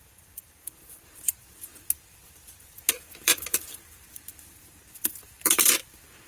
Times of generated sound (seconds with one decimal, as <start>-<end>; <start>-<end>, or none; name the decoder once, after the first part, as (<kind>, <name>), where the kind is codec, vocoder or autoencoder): 0.0-6.3 (vocoder, BigVGAN v2)